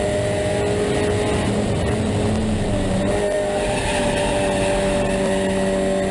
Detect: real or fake real